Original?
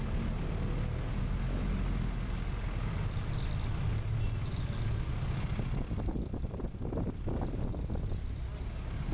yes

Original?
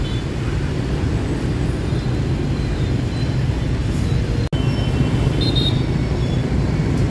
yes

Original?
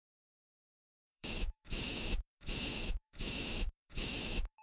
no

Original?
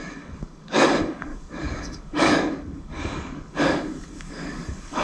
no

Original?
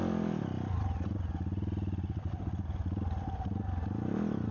yes